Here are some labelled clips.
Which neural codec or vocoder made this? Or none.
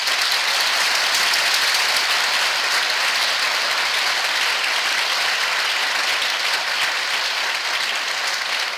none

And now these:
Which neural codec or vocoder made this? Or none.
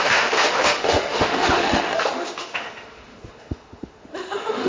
autoencoder, DAC-VAE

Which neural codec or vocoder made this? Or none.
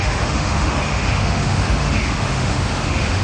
autoencoder, DAC-VAE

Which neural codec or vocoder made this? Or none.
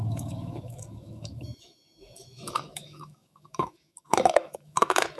autoencoder, DAC-VAE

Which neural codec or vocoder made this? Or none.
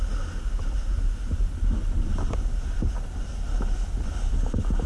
none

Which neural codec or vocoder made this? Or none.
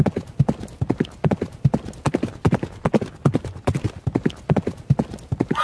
none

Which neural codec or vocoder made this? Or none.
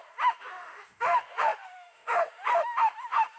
autoencoder, DAC-VAE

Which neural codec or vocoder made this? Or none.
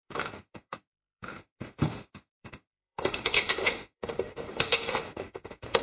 autoencoder, DAC-VAE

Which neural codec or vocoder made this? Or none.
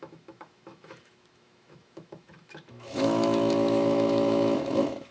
autoencoder, DAC-VAE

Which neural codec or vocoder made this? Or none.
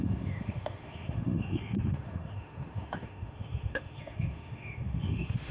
autoencoder, DAC-VAE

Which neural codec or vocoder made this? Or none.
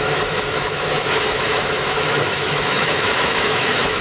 autoencoder, DAC-VAE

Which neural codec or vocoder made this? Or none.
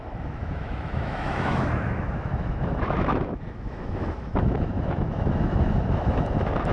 autoencoder, DAC-VAE